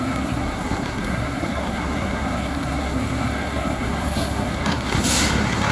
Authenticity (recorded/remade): remade